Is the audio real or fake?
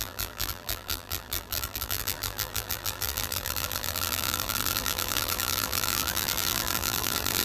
fake